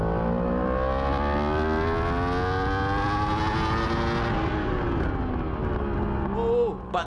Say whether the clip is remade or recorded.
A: recorded